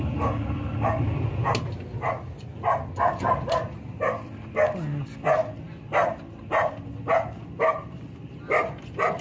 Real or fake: real